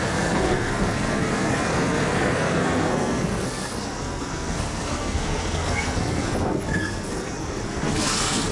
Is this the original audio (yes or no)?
no